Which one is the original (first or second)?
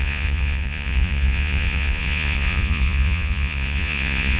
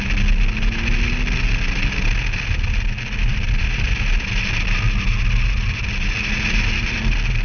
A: second